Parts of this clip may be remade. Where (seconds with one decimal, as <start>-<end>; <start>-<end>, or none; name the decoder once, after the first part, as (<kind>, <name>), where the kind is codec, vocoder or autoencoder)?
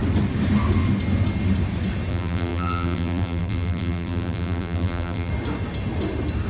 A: 2.1-5.3 (vocoder, BigVGAN v2)